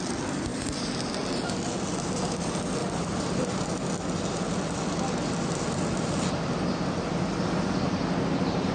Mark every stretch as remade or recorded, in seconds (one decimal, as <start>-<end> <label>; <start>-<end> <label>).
0.0-0.5 recorded; 0.5-1.1 remade; 1.1-2.8 recorded; 2.8-3.6 remade; 3.6-8.7 recorded